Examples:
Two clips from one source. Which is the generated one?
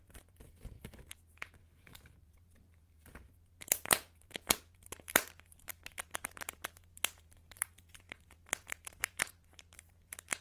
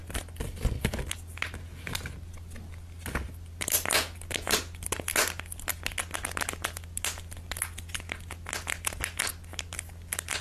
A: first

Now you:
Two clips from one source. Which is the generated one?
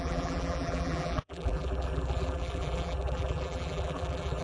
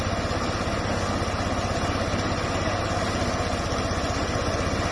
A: first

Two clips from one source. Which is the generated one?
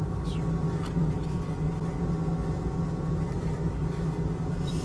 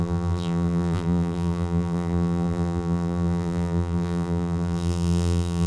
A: second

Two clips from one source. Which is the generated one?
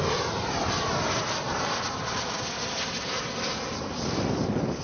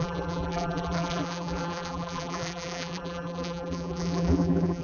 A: second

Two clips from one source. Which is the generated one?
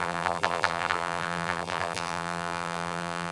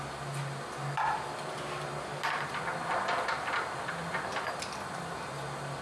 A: first